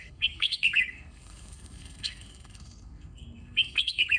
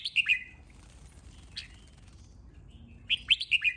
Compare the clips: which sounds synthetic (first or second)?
first